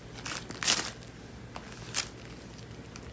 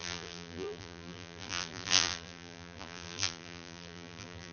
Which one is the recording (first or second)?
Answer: first